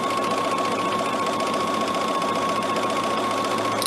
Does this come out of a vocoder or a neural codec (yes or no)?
no